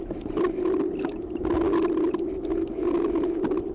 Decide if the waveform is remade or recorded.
recorded